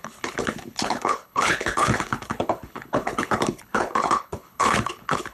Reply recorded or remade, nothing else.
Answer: remade